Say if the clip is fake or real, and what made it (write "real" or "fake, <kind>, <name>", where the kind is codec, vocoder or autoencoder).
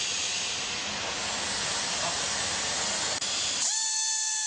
real